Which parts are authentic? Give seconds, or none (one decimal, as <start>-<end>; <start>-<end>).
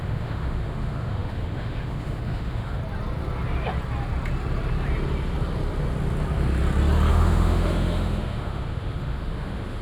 2.8-7.1